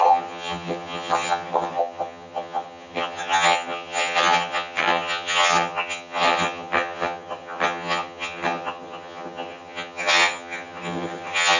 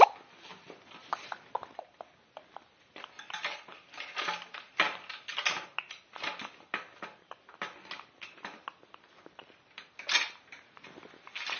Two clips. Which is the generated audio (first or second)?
first